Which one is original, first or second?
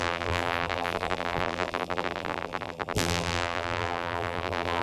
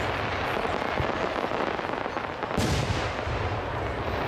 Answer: second